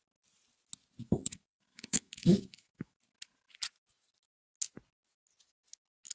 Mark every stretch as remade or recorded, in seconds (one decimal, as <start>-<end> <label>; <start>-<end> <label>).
0.0-1.0 recorded; 1.0-3.0 remade; 3.0-6.1 recorded